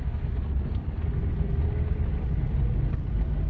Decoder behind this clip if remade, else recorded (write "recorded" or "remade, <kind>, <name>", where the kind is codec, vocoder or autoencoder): recorded